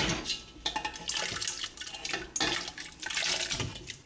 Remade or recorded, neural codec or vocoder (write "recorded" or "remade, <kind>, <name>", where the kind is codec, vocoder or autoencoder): recorded